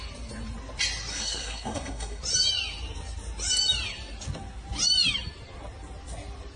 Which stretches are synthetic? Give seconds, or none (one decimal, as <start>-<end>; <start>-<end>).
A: 1.1-2.2